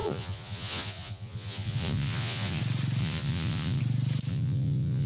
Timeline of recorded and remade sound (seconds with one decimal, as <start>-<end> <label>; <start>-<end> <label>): 0.0-2.6 remade; 2.6-3.0 recorded; 3.0-3.8 remade; 3.8-4.3 recorded; 4.3-5.1 remade